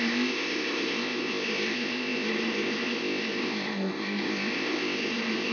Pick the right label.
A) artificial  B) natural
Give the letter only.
A